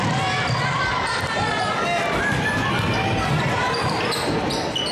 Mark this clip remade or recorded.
recorded